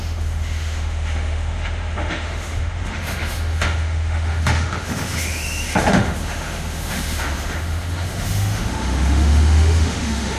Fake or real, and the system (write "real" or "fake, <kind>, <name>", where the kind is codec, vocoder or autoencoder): fake, autoencoder, DAC-VAE